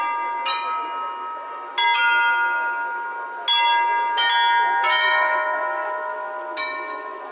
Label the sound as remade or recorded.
recorded